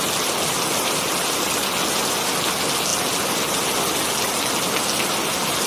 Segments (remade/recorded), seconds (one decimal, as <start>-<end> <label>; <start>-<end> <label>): 0.0-5.7 recorded